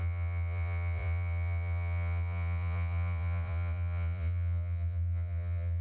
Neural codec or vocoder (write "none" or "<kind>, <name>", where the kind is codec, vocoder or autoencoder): vocoder, Vocos